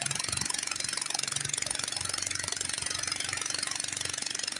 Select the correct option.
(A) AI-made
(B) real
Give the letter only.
A